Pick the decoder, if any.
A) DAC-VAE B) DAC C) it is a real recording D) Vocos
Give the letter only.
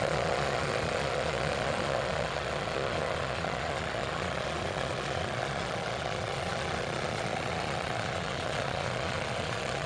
D